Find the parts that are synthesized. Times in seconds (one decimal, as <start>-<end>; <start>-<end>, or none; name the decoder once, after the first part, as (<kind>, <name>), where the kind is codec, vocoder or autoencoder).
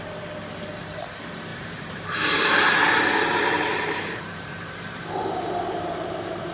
1.5-2.5 (vocoder, BigVGAN v2); 3.7-6.5